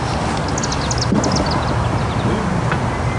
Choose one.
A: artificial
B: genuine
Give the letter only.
B